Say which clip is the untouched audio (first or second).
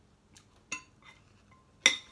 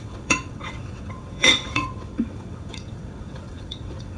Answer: first